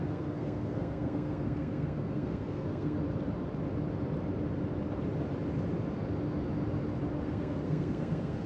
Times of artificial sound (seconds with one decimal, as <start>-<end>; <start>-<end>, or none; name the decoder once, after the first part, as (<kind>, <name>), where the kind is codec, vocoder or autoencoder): 0.0-3.0 (codec, SNAC); 7.2-8.5